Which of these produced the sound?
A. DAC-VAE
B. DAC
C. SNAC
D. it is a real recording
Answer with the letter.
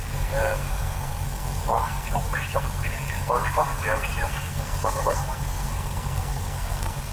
C